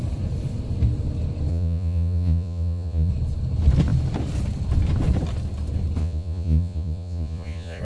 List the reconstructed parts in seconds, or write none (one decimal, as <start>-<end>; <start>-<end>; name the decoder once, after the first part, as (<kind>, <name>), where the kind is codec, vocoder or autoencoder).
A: 1.5-3.1 (vocoder, Vocos); 6.0-7.8